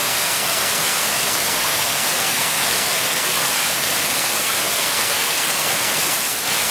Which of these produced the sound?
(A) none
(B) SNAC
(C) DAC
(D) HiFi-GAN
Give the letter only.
B